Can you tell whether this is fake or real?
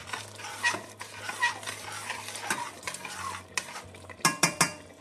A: real